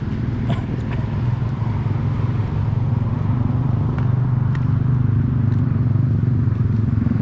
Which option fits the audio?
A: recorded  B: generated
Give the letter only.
A